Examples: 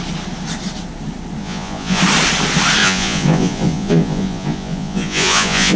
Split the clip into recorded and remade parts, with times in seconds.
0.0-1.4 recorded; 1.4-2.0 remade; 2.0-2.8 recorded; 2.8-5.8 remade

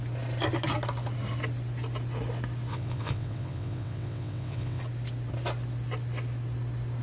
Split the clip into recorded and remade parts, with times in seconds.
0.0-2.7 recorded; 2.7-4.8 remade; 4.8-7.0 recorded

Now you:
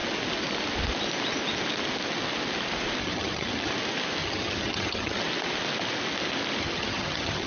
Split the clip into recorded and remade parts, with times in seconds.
0.0-3.0 recorded; 3.0-3.7 remade; 3.7-4.2 recorded; 4.2-5.2 remade; 5.2-6.6 recorded; 6.6-7.5 remade

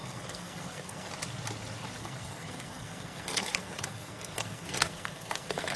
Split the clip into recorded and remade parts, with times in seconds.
0.0-1.1 remade; 1.1-2.0 recorded; 2.0-5.8 remade

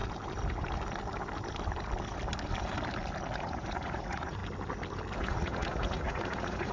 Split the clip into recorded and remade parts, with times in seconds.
0.0-3.4 recorded; 3.4-4.4 remade; 4.4-5.2 recorded; 5.2-6.7 remade